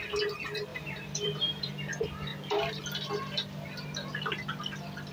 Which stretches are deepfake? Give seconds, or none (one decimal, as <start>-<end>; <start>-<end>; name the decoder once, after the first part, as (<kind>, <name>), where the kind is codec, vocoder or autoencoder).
0.7-1.7 (vocoder, BigVGAN v2)